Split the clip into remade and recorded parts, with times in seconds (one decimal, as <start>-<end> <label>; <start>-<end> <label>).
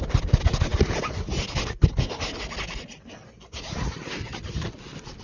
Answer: 0.0-4.2 recorded; 4.2-4.7 remade; 4.7-5.2 recorded